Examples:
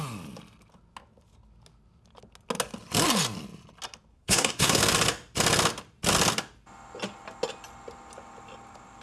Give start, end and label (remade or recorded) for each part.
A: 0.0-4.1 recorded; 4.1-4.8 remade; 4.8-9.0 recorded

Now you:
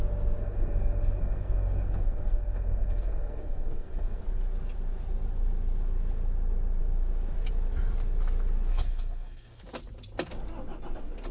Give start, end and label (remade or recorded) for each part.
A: 0.0-0.4 recorded; 0.4-4.2 remade; 4.2-8.7 recorded; 8.7-9.6 remade; 9.6-11.3 recorded

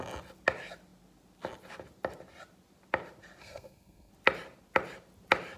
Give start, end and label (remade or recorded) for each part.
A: 0.0-3.4 recorded; 3.4-4.1 remade; 4.1-5.6 recorded

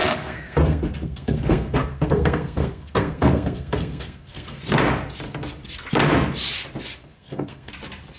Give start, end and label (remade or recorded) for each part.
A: 0.0-4.6 remade; 4.6-7.0 recorded; 7.0-7.7 remade; 7.7-8.2 recorded